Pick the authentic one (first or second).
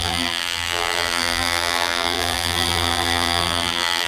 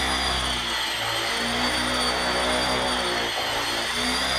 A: second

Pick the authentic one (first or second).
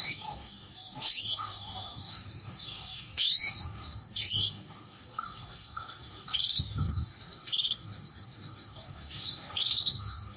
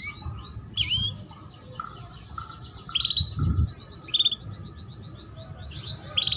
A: second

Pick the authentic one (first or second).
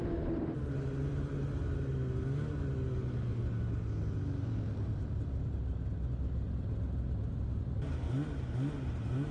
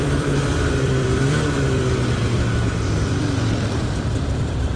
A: first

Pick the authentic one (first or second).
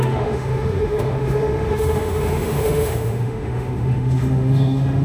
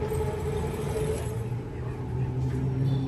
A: second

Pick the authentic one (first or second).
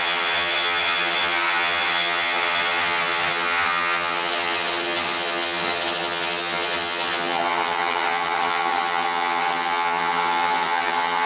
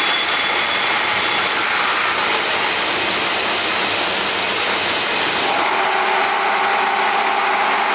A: second